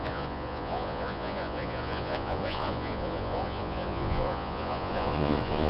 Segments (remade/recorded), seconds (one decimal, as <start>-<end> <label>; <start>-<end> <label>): 0.0-5.7 remade